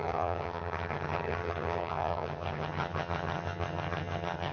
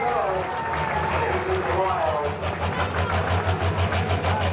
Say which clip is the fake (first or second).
first